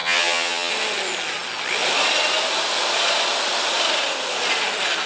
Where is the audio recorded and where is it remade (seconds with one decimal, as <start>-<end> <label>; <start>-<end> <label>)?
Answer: 0.0-0.7 remade; 0.7-5.1 recorded